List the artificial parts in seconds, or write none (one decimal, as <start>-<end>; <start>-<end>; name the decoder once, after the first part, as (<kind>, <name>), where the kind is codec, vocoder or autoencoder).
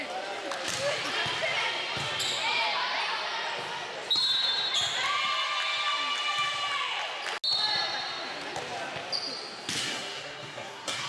9.8-11.1 (codec, SNAC)